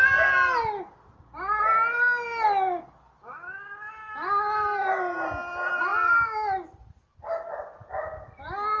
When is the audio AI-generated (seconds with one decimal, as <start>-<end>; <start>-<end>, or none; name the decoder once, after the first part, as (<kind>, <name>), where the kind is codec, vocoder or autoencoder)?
none